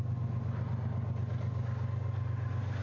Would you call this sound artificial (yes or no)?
no